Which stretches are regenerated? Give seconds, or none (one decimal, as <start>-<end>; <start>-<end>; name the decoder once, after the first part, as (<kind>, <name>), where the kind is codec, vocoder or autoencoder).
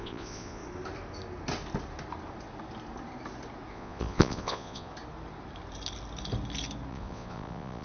0.0-0.6 (vocoder, Vocos); 3.7-4.9; 6.9-7.8